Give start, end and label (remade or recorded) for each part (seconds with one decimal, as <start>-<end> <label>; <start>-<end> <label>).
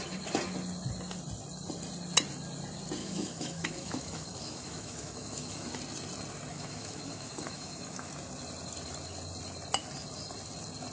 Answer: 0.0-3.0 recorded; 3.0-5.7 remade; 5.7-6.5 recorded; 6.5-8.1 remade; 8.1-10.9 recorded